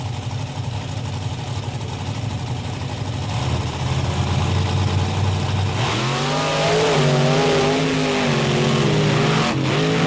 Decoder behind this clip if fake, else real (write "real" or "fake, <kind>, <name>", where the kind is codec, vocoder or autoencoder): real